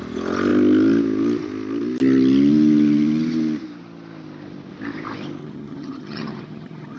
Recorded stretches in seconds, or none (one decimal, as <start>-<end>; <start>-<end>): 0.0-5.4